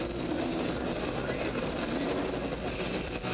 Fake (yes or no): no